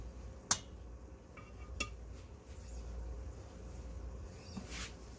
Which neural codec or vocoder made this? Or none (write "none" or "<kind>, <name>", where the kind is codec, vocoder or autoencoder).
none